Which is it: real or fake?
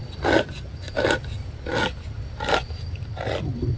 real